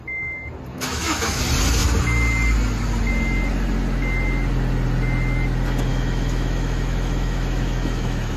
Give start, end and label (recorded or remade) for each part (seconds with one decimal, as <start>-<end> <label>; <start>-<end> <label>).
0.0-0.7 recorded; 0.7-1.4 remade; 1.4-5.9 recorded; 5.9-8.4 remade